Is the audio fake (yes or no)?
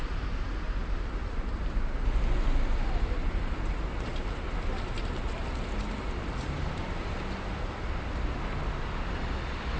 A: no